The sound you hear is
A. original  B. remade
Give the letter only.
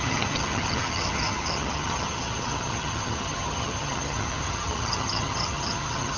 B